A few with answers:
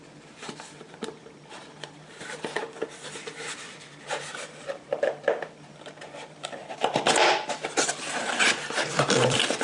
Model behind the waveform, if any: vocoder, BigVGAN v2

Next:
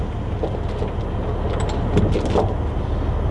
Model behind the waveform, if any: none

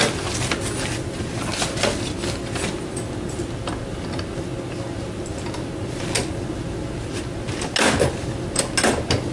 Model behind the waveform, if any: none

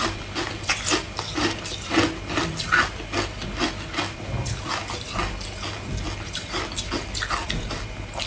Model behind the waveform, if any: none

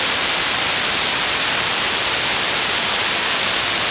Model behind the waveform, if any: none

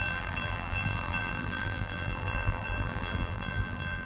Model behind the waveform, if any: vocoder, BigVGAN v2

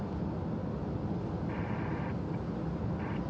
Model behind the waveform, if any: none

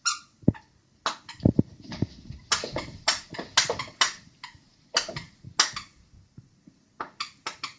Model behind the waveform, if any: none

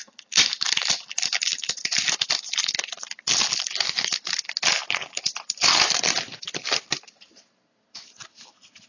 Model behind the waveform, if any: none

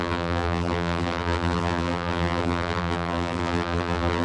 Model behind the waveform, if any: vocoder, BigVGAN v2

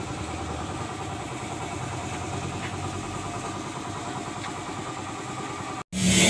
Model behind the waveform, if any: none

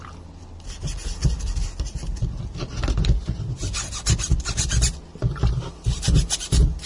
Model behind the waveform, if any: none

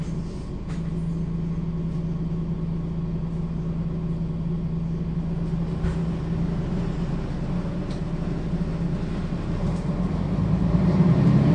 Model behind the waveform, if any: none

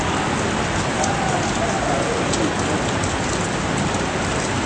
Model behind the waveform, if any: none